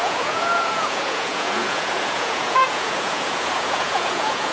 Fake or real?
fake